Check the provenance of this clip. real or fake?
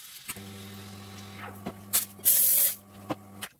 real